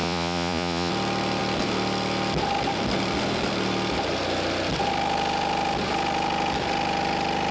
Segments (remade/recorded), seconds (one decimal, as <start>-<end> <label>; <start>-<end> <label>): 0.0-0.9 remade; 0.9-7.5 recorded